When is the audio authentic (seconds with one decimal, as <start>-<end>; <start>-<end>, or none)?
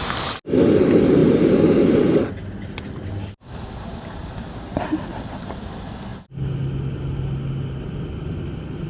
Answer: 0.0-1.2; 2.2-4.2; 4.8-8.9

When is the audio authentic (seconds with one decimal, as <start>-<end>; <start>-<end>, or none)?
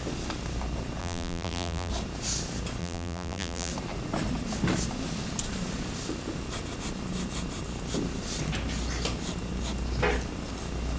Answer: 0.0-1.0; 1.9-2.8; 3.7-11.0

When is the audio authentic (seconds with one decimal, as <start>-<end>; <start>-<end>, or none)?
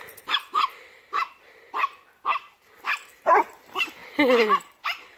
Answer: none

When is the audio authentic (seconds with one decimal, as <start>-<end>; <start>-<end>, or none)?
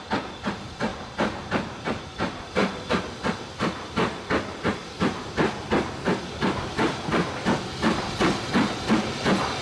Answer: 0.0-0.9; 2.0-9.6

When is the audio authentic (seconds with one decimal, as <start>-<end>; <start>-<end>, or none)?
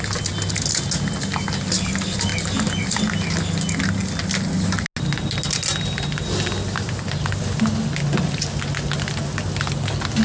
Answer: 0.0-10.2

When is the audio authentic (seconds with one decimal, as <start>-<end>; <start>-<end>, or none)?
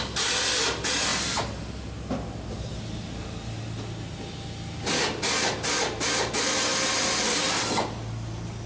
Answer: 0.0-8.7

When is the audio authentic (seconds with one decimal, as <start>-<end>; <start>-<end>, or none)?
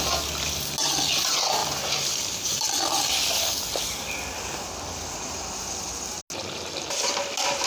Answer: 0.0-1.6; 6.2-7.7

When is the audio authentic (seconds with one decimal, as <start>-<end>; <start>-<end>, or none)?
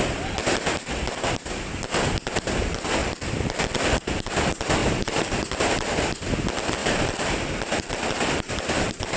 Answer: 0.0-3.0; 4.1-4.8; 5.4-6.8